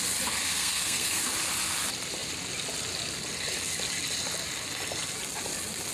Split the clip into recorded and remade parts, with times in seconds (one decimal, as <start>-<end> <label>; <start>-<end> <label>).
0.0-0.5 recorded; 0.5-1.2 remade; 1.2-5.9 recorded